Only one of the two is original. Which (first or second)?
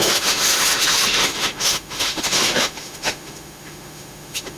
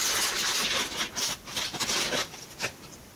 second